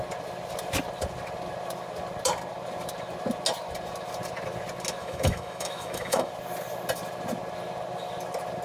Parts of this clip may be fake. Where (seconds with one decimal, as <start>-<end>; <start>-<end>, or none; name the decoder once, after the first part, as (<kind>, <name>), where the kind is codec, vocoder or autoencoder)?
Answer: 5.0-6.3 (autoencoder, DAC-VAE)